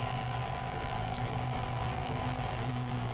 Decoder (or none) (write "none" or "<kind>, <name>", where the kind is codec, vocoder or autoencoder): vocoder, BigVGAN v2